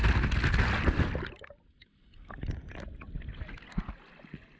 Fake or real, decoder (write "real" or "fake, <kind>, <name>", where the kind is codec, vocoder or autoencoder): real